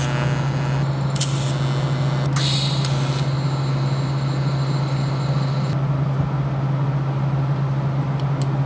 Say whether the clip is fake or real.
real